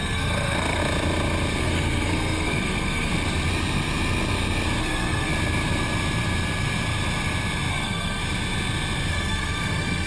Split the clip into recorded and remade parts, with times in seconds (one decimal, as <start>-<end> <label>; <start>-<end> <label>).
0.0-0.8 remade; 0.8-1.6 recorded; 1.6-3.1 remade; 3.1-4.8 recorded; 4.8-5.3 remade; 5.3-7.7 recorded; 7.7-8.2 remade; 8.2-9.1 recorded; 9.1-10.1 remade